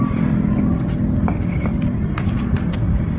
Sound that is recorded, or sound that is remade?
recorded